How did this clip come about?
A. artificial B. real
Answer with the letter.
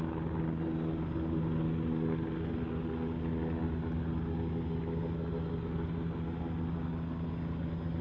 B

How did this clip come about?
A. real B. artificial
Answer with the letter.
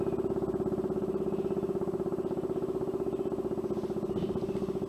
A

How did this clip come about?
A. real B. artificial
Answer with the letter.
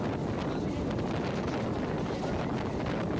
A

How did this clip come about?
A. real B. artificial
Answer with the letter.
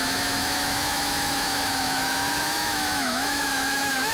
B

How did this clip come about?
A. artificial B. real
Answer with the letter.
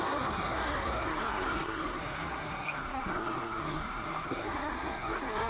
A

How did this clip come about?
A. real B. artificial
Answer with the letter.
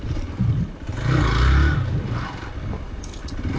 A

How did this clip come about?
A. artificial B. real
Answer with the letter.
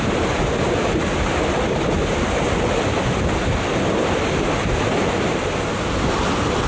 B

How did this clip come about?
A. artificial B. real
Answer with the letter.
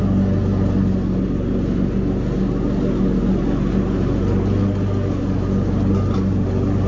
B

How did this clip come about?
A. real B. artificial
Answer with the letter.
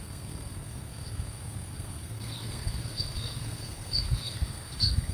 B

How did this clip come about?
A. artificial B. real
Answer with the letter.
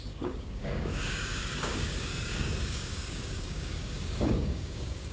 A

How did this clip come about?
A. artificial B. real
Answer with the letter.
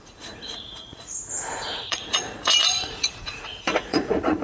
A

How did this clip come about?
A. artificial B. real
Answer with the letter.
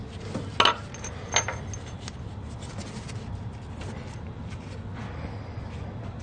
B